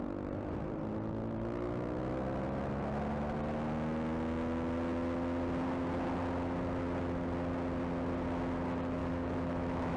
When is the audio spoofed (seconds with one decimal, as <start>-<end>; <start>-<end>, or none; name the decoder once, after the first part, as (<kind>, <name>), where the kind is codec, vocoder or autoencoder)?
9.0-10.0 (autoencoder, DAC-VAE)